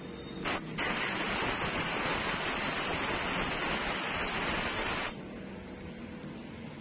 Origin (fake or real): real